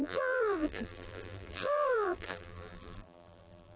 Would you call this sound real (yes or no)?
no